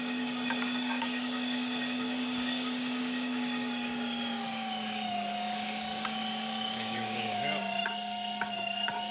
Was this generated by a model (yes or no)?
yes